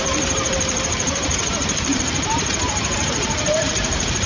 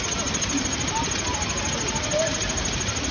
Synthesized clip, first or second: first